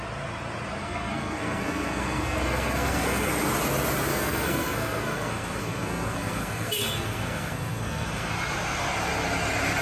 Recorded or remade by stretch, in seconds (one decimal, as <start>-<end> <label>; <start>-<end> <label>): 0.0-0.8 recorded; 0.8-3.3 remade; 3.3-4.1 recorded; 4.1-8.3 remade; 8.3-9.8 recorded